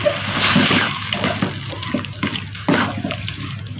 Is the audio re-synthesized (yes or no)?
no